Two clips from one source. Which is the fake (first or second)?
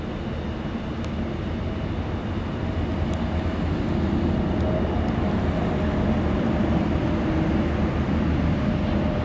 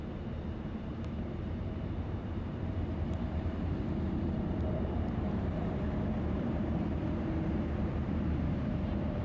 second